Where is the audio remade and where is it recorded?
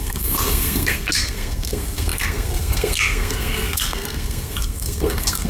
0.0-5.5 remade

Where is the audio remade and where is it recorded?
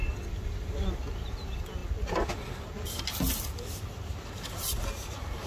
0.0-5.5 recorded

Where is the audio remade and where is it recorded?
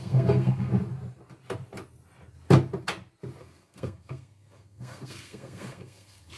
0.0-0.7 remade; 0.7-3.4 recorded; 3.4-6.4 remade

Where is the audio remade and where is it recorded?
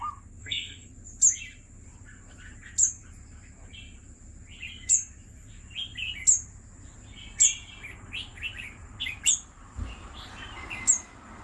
0.0-0.4 recorded; 0.4-0.9 remade; 0.9-11.4 recorded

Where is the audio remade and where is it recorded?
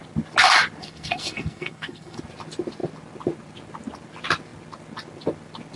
0.0-0.8 recorded; 0.8-2.2 remade; 2.2-5.8 recorded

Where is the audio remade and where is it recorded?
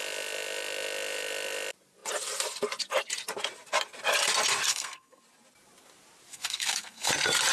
0.0-4.7 recorded; 4.7-5.2 remade; 5.2-6.3 recorded; 6.3-7.1 remade; 7.1-7.5 recorded